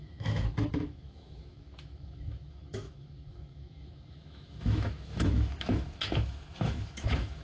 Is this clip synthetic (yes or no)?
yes